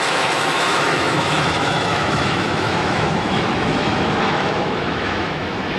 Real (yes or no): no